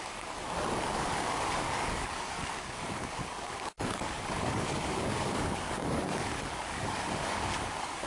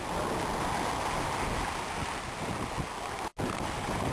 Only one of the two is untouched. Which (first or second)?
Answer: second